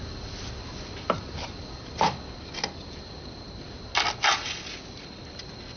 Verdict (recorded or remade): recorded